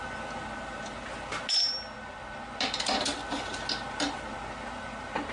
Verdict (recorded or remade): recorded